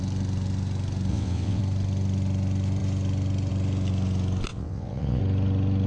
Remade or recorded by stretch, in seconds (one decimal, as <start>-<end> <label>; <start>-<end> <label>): 0.0-1.1 recorded; 1.1-1.6 remade; 1.6-4.5 recorded; 4.5-5.2 remade; 5.2-5.9 recorded